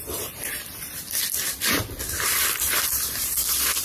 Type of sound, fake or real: fake